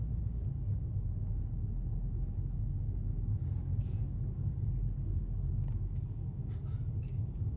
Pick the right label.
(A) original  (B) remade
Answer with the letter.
B